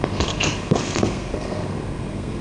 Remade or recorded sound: remade